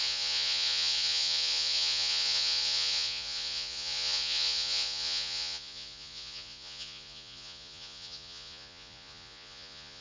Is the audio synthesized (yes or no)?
yes